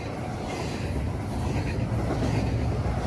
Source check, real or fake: real